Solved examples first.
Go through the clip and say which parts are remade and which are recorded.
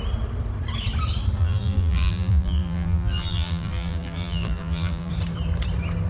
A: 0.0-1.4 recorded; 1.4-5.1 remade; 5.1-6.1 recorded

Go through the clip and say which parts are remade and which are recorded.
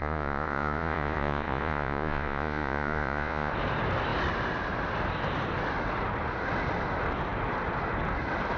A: 0.0-3.5 remade; 3.5-8.6 recorded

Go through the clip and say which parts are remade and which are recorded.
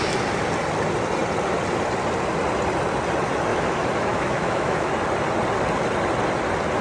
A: 0.0-3.5 recorded; 3.5-4.9 remade; 4.9-6.8 recorded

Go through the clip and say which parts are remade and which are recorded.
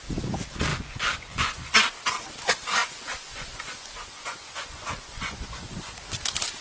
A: 0.0-0.7 recorded; 0.7-1.9 remade; 1.9-2.8 recorded; 2.8-6.1 remade; 6.1-6.6 recorded